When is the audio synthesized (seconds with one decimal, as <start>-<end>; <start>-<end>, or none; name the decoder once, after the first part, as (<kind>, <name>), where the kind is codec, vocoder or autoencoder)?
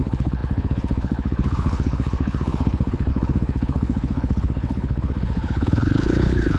0.0-6.6 (codec, HILCodec)